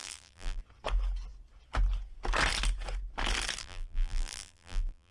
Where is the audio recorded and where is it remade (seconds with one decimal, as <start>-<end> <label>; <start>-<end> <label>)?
0.0-0.6 remade; 0.6-3.6 recorded; 3.6-5.1 remade